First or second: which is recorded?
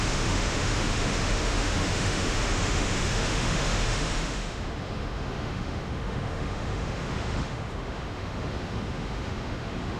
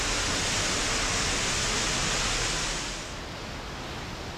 second